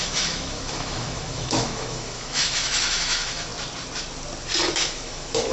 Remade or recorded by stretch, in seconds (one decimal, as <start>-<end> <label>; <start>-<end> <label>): 0.0-3.5 remade; 3.5-4.7 recorded; 4.7-5.5 remade